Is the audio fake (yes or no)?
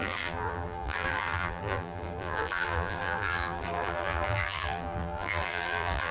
yes